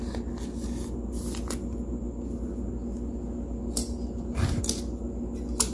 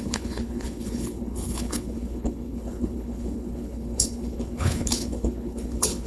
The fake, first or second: second